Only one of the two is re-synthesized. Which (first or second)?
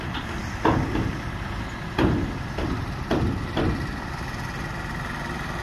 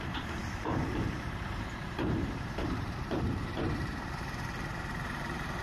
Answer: second